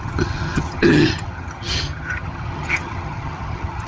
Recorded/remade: remade